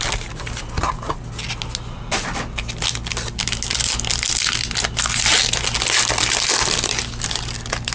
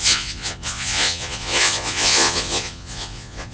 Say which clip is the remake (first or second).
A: second